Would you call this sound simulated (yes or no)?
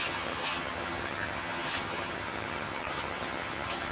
yes